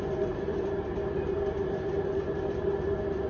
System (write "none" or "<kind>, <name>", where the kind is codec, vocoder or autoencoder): none